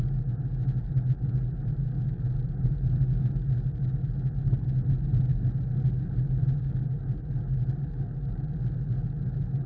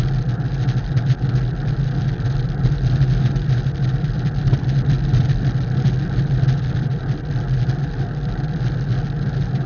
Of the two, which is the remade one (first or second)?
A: second